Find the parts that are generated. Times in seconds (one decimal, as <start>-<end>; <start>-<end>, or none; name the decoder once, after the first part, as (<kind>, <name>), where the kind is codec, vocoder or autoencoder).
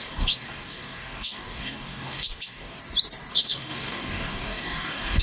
0.0-2.8 (codec, DAC); 3.3-5.2